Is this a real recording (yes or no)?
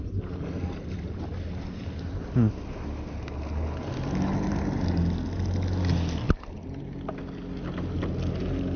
yes